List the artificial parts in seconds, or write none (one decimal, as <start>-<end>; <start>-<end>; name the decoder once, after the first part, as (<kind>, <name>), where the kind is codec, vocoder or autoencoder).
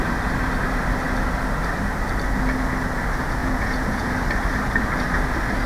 3.4-4.1 (vocoder, Vocos)